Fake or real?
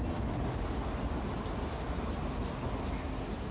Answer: real